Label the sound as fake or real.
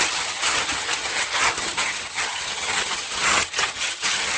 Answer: fake